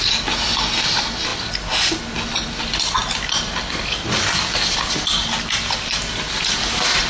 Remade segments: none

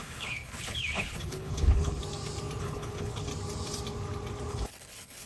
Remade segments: 0.0-2.0 (codec, HILCodec); 2.6-3.3; 4.5-5.3

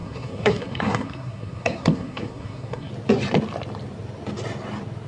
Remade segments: 0.0-2.9 (codec, SNAC)

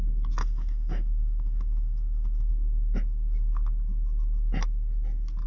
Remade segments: 0.4-2.5 (autoencoder, DAC-VAE)

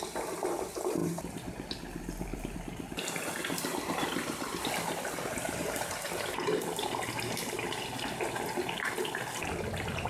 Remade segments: 1.0-3.2 (vocoder, BigVGAN v2); 3.7-7.6

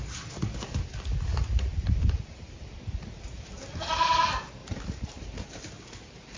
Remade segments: none

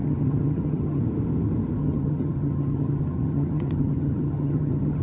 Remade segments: 0.0-1.0 (vocoder, HiFi-GAN); 1.8-5.0